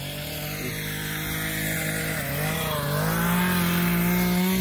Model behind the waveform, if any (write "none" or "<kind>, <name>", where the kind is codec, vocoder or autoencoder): none